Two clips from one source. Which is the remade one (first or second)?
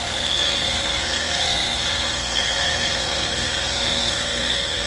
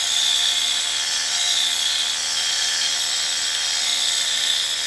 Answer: first